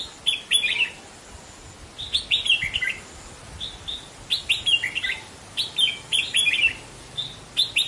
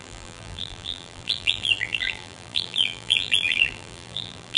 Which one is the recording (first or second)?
first